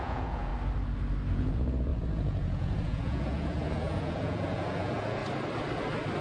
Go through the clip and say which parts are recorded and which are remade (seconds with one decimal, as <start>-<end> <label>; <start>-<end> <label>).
0.0-0.5 remade; 0.5-1.3 recorded; 1.3-5.2 remade; 5.2-6.2 recorded